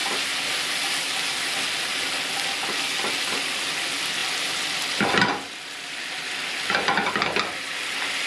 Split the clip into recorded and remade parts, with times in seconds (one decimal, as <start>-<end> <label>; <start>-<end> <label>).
0.0-4.2 recorded; 4.2-5.0 remade; 5.0-8.3 recorded